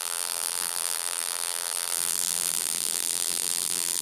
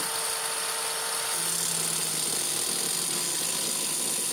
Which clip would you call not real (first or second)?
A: first